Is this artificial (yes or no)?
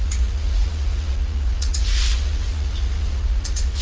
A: yes